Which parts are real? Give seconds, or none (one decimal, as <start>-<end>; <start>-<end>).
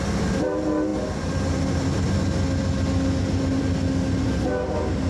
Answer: 0.0-5.1